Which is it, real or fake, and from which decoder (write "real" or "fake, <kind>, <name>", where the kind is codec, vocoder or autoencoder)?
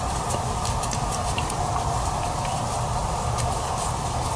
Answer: real